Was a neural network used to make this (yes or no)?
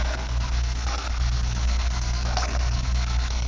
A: yes